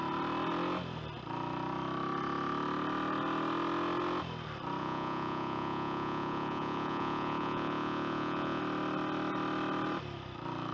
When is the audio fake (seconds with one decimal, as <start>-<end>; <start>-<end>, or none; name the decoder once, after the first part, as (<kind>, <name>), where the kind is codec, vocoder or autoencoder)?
4.8-8.6 (vocoder, Vocos)